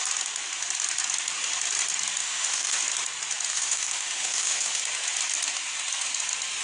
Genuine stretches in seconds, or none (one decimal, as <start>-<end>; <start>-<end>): 0.0-2.2; 2.8-3.5; 4.8-6.6